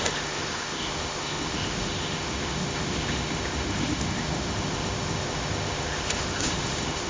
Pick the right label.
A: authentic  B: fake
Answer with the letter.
B